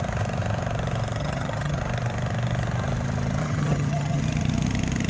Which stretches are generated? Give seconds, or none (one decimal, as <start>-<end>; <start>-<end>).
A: 1.2-1.8; 3.4-4.2